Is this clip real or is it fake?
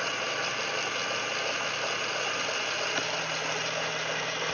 real